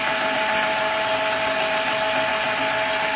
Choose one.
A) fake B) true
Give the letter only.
B